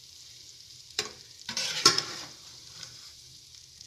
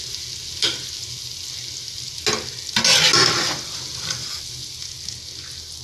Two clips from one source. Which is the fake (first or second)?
first